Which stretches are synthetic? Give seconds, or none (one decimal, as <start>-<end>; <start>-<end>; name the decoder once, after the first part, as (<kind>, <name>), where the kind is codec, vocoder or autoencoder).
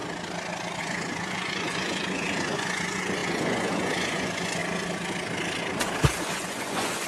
0.8-4.6 (vocoder, Vocos); 6.2-7.1